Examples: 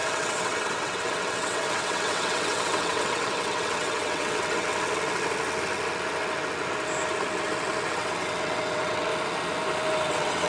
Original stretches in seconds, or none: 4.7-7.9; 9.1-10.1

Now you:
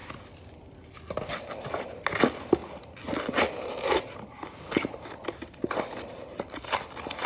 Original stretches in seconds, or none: 0.0-7.3

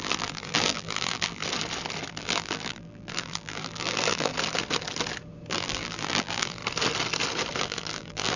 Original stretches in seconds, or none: 1.4-2.1; 4.3-5.5; 6.6-7.6

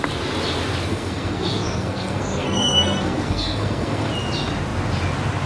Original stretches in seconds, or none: 0.0-0.9; 4.1-5.5

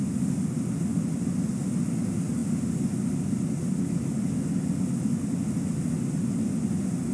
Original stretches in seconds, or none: 0.0-7.1

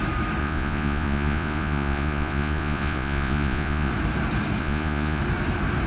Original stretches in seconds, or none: 0.0-0.4; 3.9-4.6; 5.2-5.9